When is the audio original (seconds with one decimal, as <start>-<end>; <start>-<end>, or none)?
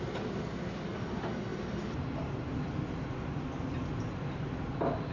0.0-1.5; 4.6-5.1